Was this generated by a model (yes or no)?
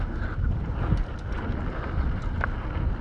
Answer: no